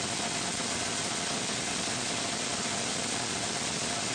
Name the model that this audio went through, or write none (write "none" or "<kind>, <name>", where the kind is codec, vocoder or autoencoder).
none